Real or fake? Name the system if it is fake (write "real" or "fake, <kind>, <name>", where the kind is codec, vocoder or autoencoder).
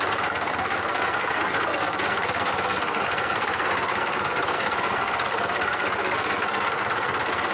fake, codec, SNAC